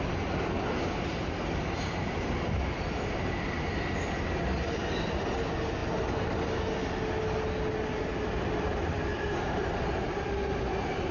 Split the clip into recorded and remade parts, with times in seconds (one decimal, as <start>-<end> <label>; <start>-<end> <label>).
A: 0.0-11.1 recorded